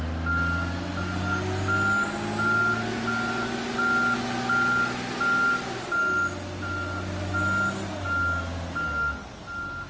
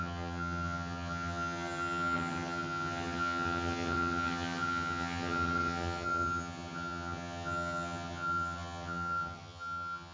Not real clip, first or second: second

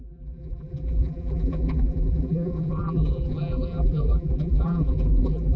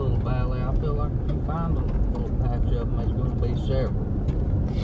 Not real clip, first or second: first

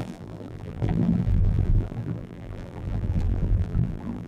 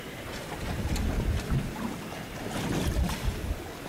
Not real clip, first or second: first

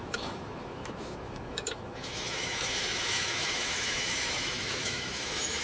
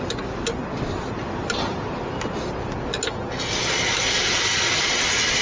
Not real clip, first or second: first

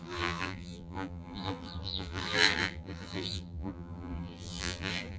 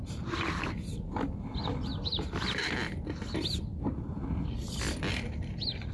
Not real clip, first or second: first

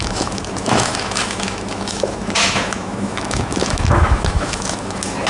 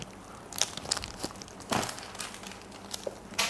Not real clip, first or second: first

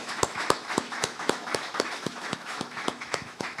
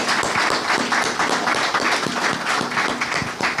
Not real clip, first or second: first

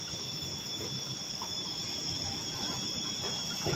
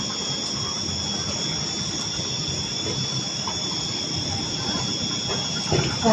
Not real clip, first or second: first